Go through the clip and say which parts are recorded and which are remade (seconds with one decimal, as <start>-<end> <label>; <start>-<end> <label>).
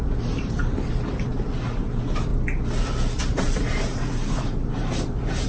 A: 0.0-1.3 remade; 1.3-1.9 recorded; 1.9-2.3 remade; 2.3-3.2 recorded; 3.2-5.5 remade